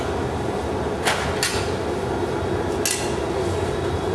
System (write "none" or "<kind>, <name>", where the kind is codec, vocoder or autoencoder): none